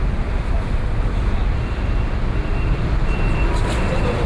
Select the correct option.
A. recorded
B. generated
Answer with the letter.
A